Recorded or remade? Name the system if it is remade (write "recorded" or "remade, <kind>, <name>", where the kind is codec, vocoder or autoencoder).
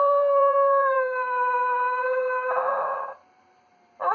remade, vocoder, BigVGAN v2